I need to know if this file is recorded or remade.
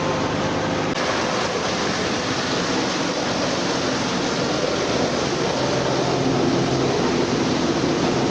recorded